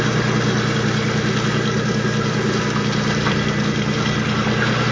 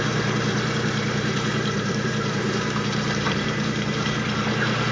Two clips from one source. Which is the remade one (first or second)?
second